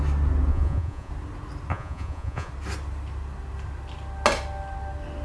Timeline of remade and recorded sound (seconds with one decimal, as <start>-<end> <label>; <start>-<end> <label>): 0.0-0.5 recorded; 0.5-1.1 remade; 1.1-1.7 recorded; 1.7-2.5 remade; 2.5-5.2 recorded

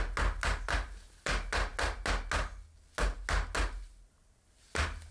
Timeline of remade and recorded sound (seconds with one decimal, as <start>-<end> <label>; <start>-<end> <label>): 0.0-5.1 recorded

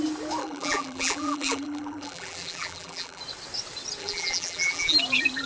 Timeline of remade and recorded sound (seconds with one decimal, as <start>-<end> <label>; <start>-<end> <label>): 0.0-0.4 recorded; 0.4-3.2 remade; 3.2-4.0 recorded; 4.0-5.0 remade; 5.0-5.5 recorded